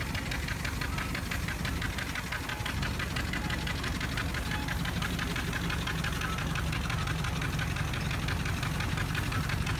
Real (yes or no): yes